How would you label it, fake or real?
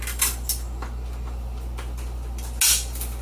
real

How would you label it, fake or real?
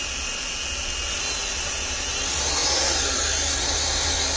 real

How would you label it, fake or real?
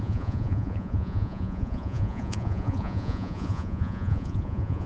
fake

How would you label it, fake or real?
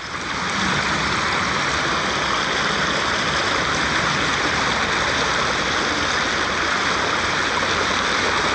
real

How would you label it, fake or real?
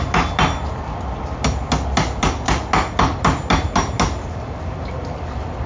real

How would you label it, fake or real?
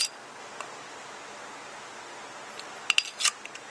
real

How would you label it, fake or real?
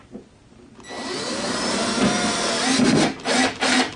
real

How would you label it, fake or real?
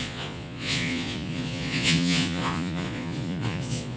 fake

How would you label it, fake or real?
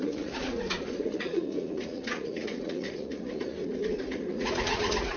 fake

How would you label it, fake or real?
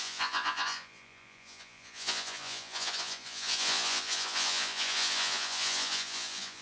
fake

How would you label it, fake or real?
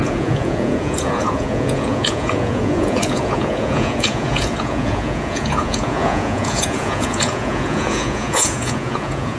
fake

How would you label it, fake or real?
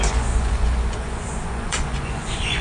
fake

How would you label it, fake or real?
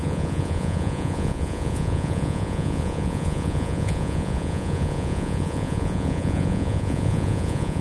fake